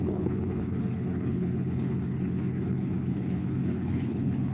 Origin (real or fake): fake